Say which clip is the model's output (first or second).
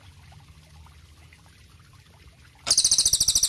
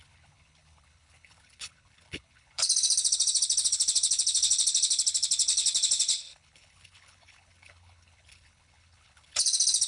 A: second